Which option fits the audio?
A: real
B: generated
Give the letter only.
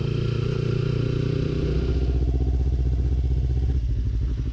A